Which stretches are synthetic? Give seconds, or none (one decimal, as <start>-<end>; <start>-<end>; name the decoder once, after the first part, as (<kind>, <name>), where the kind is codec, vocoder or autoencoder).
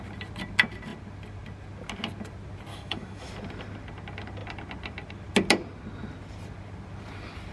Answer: 2.7-3.3 (autoencoder, DAC-VAE)